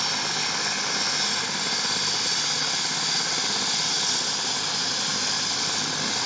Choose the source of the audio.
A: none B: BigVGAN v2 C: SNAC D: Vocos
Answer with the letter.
A